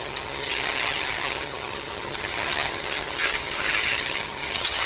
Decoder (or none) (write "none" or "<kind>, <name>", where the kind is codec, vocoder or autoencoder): vocoder, HiFi-GAN